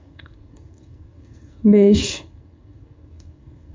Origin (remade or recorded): remade